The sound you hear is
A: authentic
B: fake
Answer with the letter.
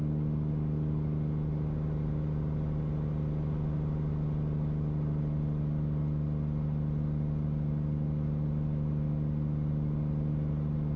A